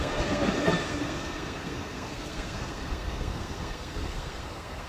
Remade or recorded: remade